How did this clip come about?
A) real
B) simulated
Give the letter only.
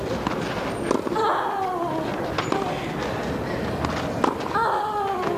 A